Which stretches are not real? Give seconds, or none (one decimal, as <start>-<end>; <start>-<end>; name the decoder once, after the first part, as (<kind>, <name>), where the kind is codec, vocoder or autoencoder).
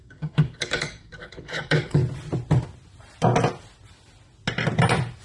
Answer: 0.0-2.0 (codec, DAC)